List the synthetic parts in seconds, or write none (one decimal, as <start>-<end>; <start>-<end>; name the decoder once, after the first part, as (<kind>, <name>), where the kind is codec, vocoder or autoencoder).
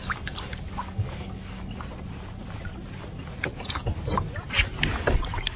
0.0-1.6 (codec, DAC)